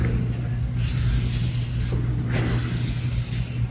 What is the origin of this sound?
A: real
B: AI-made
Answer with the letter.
A